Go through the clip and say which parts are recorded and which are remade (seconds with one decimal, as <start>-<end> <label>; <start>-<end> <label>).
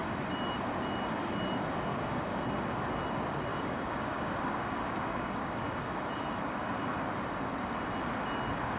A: 0.0-1.9 recorded; 1.9-2.4 remade; 2.4-3.5 recorded; 3.5-6.1 remade; 6.1-8.8 recorded